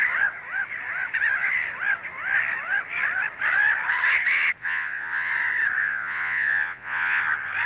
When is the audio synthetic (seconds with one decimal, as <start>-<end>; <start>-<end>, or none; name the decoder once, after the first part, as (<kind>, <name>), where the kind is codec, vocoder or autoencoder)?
4.6-5.3 (vocoder, Vocos); 5.8-7.2